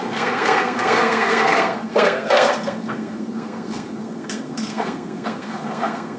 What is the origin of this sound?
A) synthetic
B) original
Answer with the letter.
A